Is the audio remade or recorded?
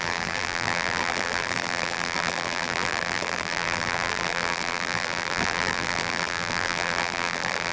remade